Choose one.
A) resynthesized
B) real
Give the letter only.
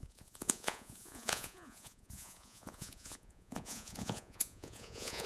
A